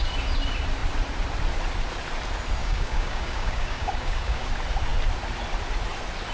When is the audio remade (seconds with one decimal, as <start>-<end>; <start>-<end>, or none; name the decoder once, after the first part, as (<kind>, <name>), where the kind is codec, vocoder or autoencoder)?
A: 2.6-4.5 (codec, DAC)